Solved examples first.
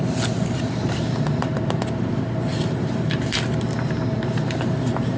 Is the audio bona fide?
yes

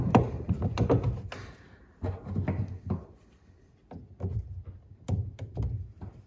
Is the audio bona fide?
yes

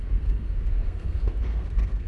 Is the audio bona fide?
no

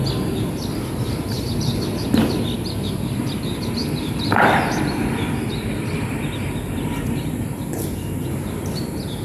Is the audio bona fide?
yes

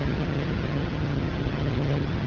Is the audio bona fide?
no